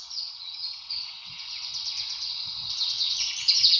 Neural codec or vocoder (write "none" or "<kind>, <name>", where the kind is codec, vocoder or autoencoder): vocoder, WaveNeXt